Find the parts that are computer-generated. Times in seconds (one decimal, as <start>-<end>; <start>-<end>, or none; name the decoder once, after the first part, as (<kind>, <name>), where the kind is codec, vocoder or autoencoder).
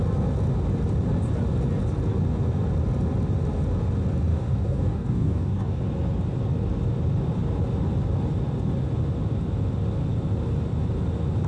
4.3-5.8 (codec, DAC)